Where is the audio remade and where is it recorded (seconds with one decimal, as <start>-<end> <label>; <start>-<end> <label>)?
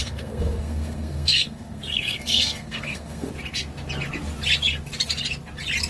0.0-3.3 remade; 3.3-5.9 recorded